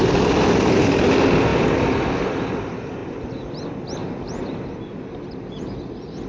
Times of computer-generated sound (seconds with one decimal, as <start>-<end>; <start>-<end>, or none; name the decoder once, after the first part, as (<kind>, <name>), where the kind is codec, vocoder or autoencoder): 3.0-3.5 (vocoder, BigVGAN v2); 4.0-4.8

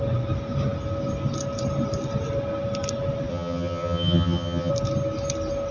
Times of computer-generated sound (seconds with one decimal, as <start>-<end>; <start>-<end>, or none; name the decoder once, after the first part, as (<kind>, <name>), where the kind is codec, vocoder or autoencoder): 3.3-4.7 (vocoder, HiFi-GAN)

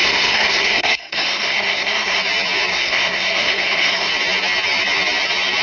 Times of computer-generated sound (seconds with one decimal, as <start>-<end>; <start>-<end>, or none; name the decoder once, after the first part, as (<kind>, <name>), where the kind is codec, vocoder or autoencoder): 0.0-2.2 (codec, SNAC); 2.7-4.1

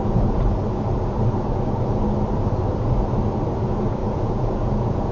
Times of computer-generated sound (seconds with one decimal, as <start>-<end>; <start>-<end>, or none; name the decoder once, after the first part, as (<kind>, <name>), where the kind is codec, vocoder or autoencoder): 4.0-5.1 (vocoder, Vocos)